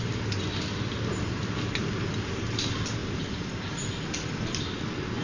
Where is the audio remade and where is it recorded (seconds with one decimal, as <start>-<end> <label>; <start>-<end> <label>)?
0.0-5.2 recorded